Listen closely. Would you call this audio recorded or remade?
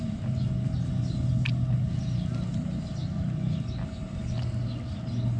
recorded